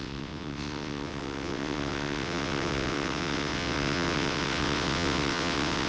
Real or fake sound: fake